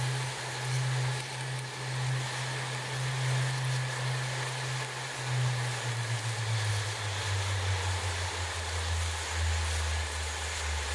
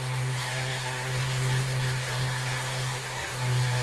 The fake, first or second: second